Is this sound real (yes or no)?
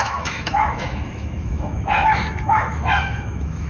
no